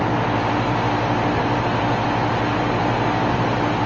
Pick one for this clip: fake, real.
real